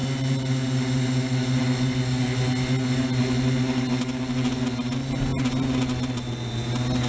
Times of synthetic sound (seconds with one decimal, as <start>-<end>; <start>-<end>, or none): 0.0-1.6